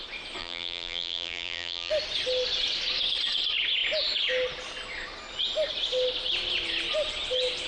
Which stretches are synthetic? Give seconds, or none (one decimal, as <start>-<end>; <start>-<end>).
0.4-1.9